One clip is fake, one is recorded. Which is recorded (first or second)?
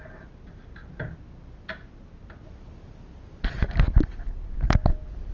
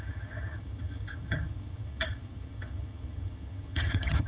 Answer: first